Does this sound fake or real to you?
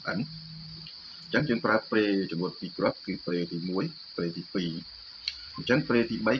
real